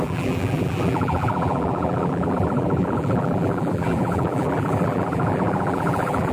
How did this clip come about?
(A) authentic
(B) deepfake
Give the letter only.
B